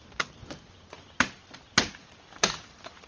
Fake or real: real